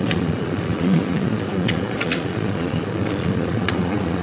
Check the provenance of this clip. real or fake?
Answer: fake